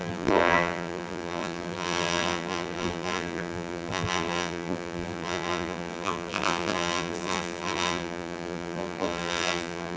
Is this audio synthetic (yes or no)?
yes